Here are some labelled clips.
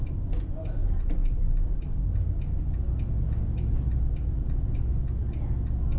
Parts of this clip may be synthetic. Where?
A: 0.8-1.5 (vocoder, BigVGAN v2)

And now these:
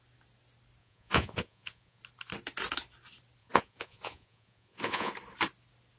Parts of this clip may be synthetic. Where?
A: 0.8-2.0 (vocoder, Vocos); 3.4-5.1